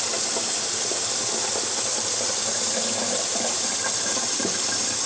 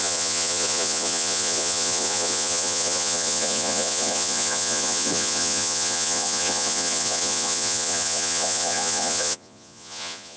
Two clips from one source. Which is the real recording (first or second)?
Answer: first